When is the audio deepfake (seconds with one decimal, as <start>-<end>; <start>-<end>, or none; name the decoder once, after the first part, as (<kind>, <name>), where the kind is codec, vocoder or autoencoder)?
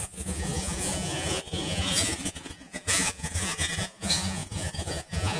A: 0.0-5.4 (vocoder, Vocos)